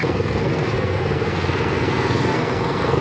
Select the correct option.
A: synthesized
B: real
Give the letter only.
A